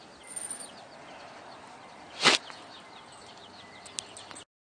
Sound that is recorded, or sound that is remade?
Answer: recorded